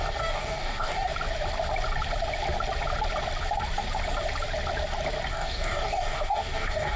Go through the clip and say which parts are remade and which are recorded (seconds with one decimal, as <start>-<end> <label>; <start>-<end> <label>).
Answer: 0.0-1.1 remade; 1.1-5.3 recorded; 5.3-7.0 remade